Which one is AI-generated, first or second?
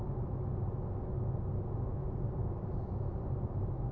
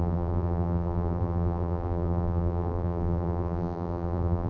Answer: second